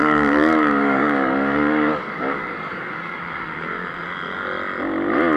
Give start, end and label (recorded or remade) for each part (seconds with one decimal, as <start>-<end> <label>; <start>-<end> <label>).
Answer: 0.0-3.2 remade; 3.2-5.4 recorded